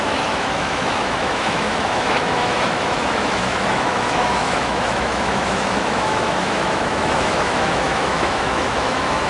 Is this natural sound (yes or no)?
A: no